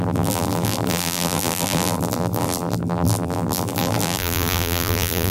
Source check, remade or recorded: remade